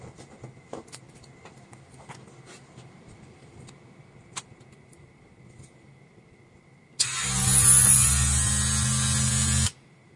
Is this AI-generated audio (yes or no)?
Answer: no